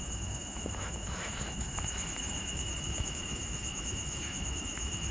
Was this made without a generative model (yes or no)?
no